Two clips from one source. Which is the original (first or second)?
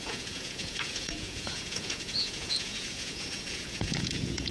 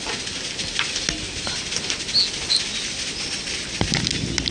second